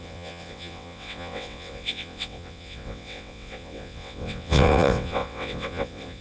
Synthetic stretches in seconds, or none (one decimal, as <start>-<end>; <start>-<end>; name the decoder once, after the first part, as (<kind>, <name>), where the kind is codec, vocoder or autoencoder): 0.0-6.2 (vocoder, WaveNeXt)